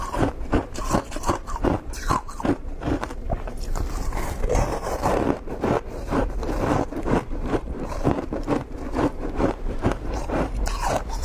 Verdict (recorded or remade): remade